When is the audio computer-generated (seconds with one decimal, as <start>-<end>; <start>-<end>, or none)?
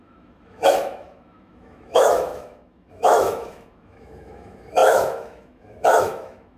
0.0-6.6